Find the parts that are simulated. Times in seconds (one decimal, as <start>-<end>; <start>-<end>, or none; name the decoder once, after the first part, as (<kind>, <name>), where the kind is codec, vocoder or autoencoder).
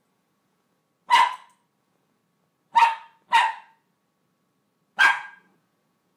0.0-0.8 (vocoder, Vocos); 1.8-2.2; 5.0-6.2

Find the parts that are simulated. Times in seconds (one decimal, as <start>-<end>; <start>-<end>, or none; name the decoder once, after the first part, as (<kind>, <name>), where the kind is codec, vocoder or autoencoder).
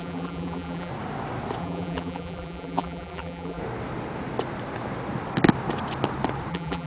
0.0-0.9 (vocoder, BigVGAN v2); 1.6-3.6; 6.5-6.9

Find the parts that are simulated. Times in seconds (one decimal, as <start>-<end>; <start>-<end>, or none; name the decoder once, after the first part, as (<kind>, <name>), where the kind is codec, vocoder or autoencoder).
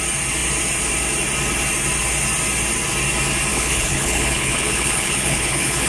3.5-5.9 (codec, HILCodec)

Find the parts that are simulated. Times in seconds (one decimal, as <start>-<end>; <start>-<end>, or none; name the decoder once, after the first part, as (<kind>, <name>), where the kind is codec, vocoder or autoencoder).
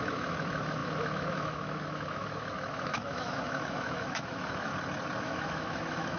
0.0-4.7 (autoencoder, DAC-VAE); 5.2-6.2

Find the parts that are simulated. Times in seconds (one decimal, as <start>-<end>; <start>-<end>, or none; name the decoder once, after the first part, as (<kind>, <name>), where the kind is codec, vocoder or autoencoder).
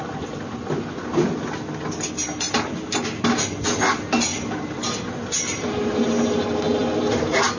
none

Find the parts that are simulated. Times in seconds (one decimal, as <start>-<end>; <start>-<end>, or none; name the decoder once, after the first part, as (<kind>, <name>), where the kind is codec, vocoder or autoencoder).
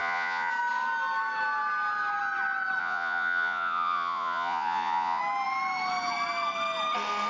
0.0-0.5 (vocoder, Vocos); 2.8-5.2